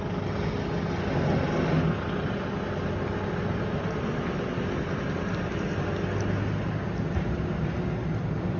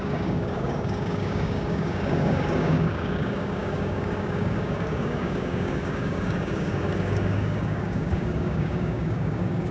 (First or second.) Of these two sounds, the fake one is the second